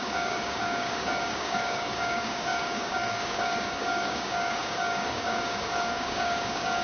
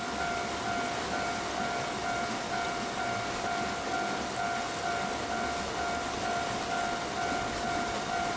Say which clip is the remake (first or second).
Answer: first